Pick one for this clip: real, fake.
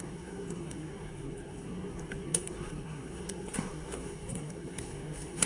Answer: fake